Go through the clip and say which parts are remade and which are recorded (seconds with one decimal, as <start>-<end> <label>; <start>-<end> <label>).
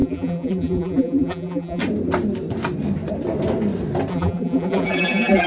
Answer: 0.0-1.8 remade; 1.8-4.1 recorded; 4.1-5.5 remade